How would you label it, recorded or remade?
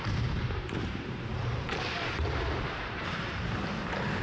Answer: remade